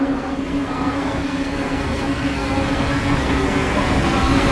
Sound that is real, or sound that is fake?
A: fake